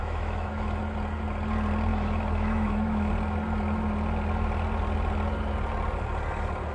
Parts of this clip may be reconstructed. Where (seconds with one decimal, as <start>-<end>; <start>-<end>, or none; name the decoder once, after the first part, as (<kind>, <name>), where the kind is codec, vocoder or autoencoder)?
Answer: 0.0-0.8 (autoencoder, DAC-VAE); 1.9-3.1